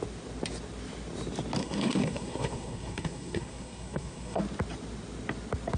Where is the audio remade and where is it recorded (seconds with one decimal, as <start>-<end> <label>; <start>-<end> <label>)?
0.0-1.6 recorded; 1.6-4.4 remade; 4.4-5.8 recorded